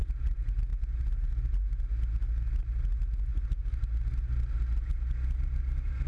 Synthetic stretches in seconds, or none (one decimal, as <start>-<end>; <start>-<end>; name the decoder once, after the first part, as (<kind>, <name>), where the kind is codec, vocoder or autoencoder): none